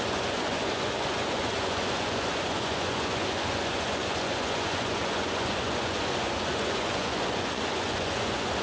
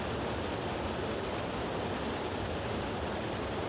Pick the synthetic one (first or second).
first